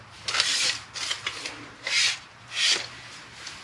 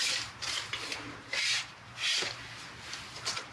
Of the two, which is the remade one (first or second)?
second